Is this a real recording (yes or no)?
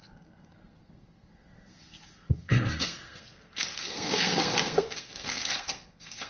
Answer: no